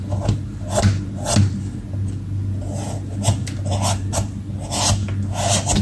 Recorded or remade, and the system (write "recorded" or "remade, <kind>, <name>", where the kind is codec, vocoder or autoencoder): recorded